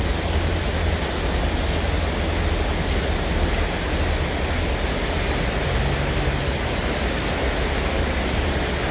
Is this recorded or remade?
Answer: recorded